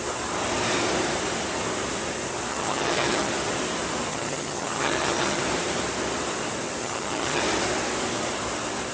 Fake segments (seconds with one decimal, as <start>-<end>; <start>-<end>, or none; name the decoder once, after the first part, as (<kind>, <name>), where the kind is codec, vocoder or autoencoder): 2.5-3.3 (vocoder, HiFi-GAN); 4.1-5.4; 6.8-7.4